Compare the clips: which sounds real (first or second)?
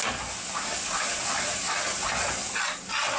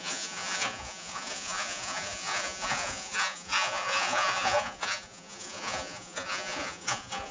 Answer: first